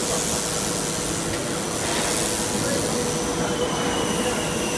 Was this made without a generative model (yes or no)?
yes